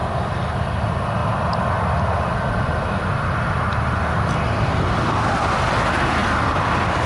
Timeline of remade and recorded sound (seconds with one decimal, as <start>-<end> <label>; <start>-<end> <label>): 0.0-7.1 recorded

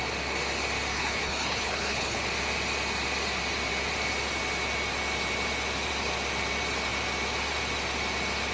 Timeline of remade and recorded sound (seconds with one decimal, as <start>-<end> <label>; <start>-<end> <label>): 0.0-0.9 recorded; 0.9-2.2 remade; 2.2-8.5 recorded

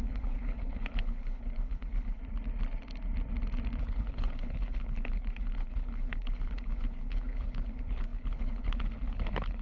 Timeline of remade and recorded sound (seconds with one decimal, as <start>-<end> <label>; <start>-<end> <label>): 0.0-2.2 remade; 2.2-3.8 recorded; 3.8-9.6 remade

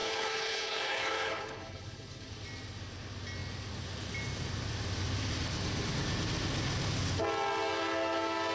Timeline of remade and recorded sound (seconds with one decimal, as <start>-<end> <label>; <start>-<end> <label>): 0.0-2.3 remade; 2.3-8.5 recorded

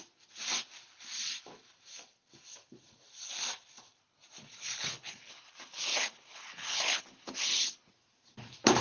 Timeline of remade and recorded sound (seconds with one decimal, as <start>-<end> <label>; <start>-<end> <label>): 0.0-4.0 recorded; 4.0-5.5 remade; 5.5-5.9 recorded; 5.9-7.9 remade; 7.9-8.8 recorded